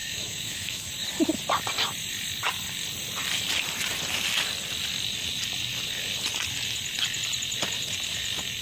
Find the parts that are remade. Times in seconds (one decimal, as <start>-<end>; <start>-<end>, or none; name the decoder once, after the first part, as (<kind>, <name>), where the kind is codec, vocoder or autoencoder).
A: 0.0-0.9 (autoencoder, DAC-VAE)